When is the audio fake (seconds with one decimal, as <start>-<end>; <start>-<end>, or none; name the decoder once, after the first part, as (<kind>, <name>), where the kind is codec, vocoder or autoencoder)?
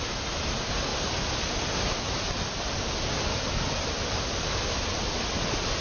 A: none